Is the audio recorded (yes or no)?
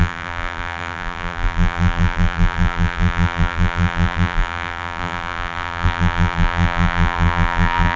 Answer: no